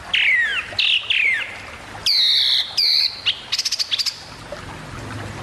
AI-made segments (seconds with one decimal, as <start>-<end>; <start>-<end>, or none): none